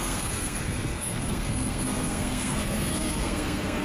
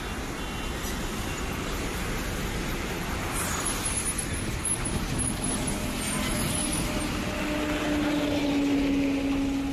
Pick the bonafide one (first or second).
second